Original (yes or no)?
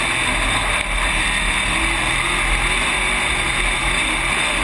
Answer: yes